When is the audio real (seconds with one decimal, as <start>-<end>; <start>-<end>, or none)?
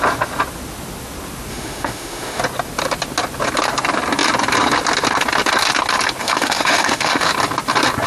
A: 0.0-1.5; 2.4-6.2; 7.3-8.1